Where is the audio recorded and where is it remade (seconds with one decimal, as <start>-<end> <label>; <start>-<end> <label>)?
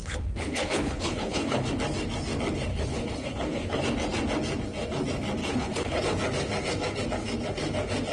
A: 0.0-1.7 remade; 1.7-2.7 recorded; 2.7-3.8 remade; 3.8-5.4 recorded; 5.4-6.0 remade; 6.0-8.1 recorded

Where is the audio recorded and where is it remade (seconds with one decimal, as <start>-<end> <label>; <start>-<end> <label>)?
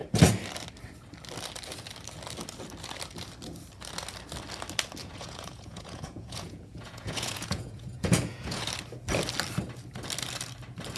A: 0.0-5.0 recorded; 5.0-8.7 remade; 8.7-11.0 recorded